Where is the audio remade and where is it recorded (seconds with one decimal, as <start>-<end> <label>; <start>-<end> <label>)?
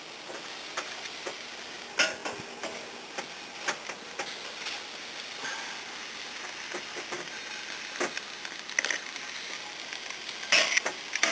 0.0-11.3 recorded